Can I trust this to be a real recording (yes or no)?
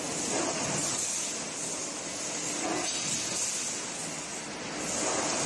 yes